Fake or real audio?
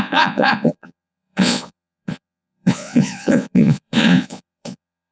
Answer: fake